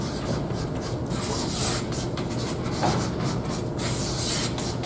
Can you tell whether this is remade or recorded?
recorded